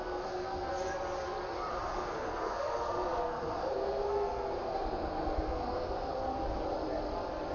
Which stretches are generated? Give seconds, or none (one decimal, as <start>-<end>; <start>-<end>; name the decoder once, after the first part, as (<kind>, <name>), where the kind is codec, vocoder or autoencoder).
0.0-0.7 (codec, SNAC); 1.7-6.1